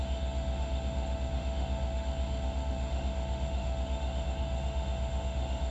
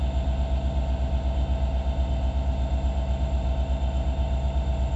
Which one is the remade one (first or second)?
first